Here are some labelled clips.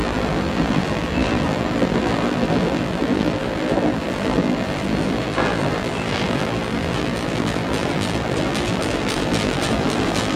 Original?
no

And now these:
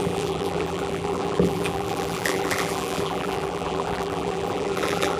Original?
no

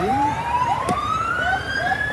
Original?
no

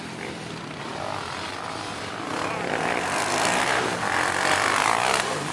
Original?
no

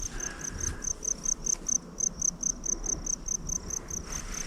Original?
yes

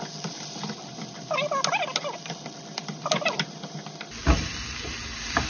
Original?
yes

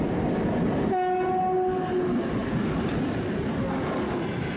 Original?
yes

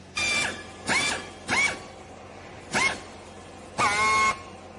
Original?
yes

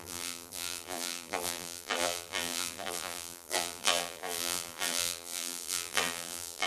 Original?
no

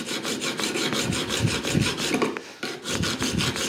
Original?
yes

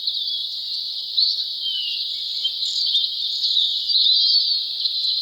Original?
no